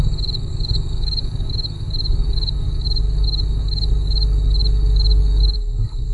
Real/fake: fake